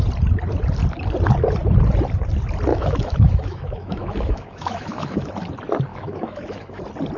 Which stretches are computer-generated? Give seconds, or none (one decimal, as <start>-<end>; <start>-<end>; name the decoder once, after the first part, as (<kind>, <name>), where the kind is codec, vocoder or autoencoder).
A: 2.7-5.3 (autoencoder, DAC-VAE); 5.9-6.8